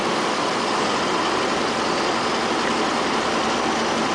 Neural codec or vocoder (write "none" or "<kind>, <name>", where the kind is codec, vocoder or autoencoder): none